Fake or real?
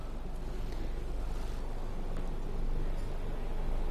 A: real